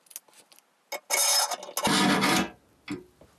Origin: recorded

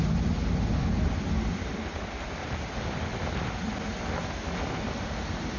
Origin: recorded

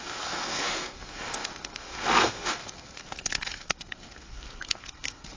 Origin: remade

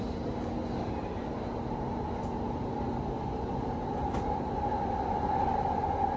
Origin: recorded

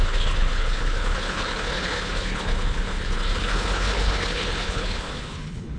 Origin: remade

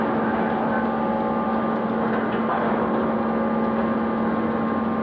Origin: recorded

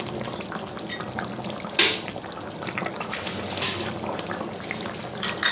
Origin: recorded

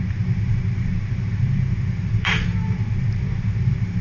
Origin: remade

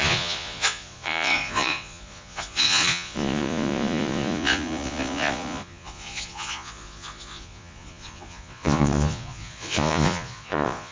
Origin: remade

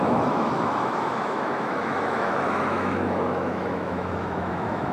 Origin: remade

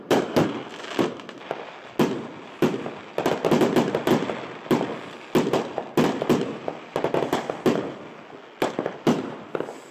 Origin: recorded